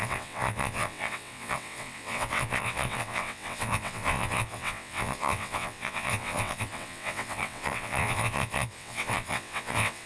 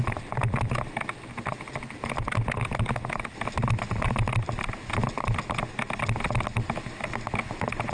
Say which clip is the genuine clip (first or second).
second